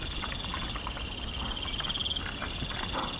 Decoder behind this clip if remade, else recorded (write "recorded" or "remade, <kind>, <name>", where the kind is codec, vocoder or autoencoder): recorded